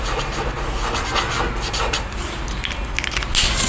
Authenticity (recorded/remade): recorded